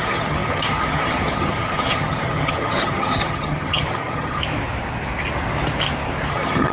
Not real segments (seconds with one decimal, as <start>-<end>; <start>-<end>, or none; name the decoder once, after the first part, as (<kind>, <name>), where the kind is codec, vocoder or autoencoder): 0.0-4.4 (vocoder, HiFi-GAN); 6.3-6.7